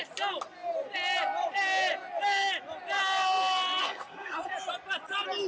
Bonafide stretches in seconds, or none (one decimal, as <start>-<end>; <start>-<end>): 0.0-3.8; 4.5-5.5